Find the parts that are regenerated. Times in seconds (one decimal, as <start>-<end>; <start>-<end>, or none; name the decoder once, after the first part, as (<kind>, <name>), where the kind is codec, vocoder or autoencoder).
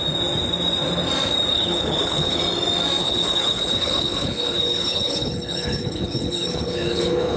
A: 1.5-2.4 (codec, HILCodec); 3.0-7.4